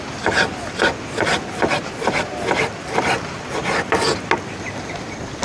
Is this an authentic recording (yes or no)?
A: yes